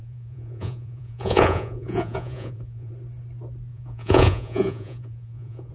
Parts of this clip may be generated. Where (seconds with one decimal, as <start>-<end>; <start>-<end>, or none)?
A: 0.0-2.9; 3.7-5.7

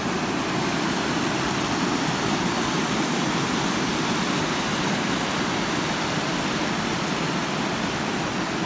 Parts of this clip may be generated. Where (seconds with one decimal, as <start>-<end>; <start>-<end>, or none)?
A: none

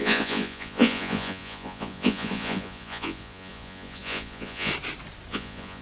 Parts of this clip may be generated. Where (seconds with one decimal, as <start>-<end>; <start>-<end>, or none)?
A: 0.0-4.7; 5.3-5.8